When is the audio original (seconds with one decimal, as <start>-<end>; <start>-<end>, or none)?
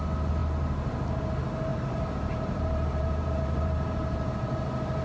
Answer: 0.0-1.7